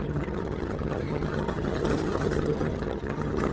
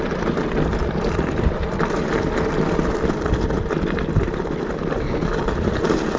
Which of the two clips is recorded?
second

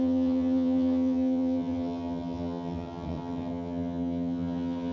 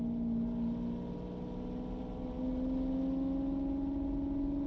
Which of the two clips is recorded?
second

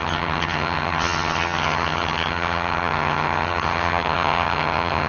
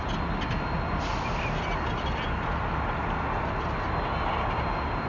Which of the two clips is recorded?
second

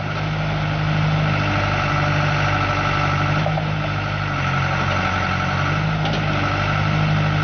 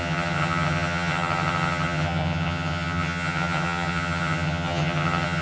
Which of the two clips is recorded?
first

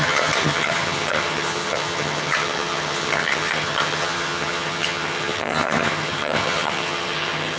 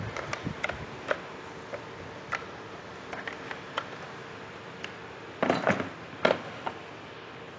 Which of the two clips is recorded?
second